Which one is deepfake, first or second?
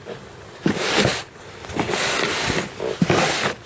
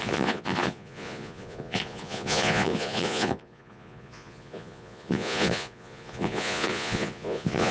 second